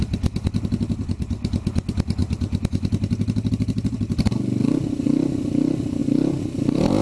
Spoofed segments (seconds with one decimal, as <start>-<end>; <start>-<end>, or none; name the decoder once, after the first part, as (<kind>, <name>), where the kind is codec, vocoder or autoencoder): none